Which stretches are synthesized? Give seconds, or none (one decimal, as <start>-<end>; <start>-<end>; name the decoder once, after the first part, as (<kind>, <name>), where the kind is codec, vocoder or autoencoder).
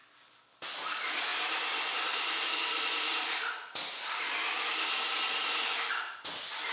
1.3-4.2 (vocoder, BigVGAN v2)